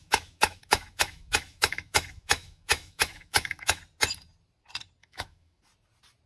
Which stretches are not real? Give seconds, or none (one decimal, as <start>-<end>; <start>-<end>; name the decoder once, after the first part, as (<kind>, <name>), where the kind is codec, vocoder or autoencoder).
0.0-3.8 (autoencoder, DAC-VAE); 5.0-5.6